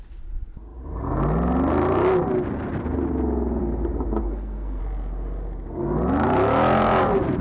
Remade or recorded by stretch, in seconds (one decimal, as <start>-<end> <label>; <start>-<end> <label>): 0.0-4.2 recorded; 4.2-4.8 remade; 4.8-7.4 recorded